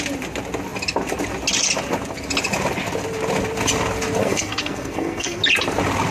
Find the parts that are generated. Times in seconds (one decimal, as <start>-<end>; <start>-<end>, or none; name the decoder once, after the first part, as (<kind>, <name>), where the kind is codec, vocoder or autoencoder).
4.2-5.4 (codec, SNAC)